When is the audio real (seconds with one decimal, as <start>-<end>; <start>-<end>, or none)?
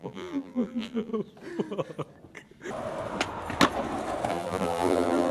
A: 1.1-4.3